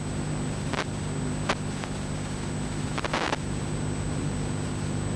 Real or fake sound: real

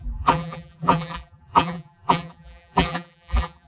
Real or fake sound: fake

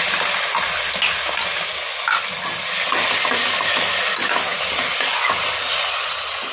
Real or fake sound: real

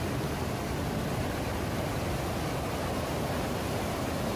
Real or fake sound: real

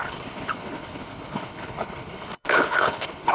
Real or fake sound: fake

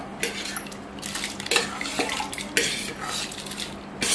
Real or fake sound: real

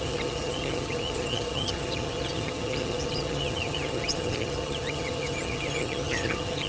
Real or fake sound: fake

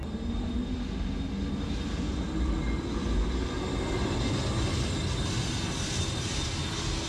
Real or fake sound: real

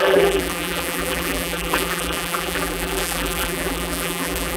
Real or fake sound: fake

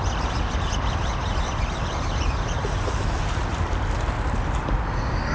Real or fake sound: real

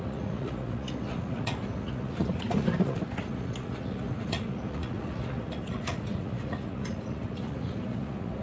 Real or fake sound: fake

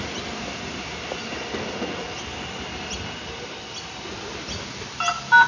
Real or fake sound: real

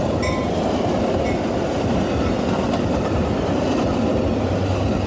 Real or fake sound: fake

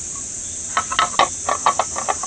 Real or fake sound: real